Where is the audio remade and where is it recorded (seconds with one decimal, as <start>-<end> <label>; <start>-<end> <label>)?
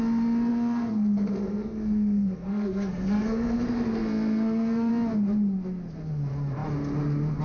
0.0-0.5 recorded; 0.5-4.9 remade; 4.9-7.4 recorded